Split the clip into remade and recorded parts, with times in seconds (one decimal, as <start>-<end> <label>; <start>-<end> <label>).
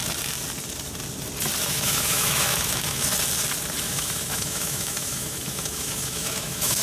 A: 0.0-1.6 recorded; 1.6-3.1 remade; 3.1-3.8 recorded; 3.8-6.8 remade